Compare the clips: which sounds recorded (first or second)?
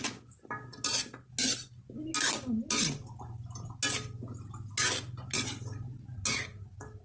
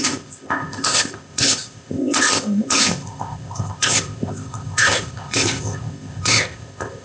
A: first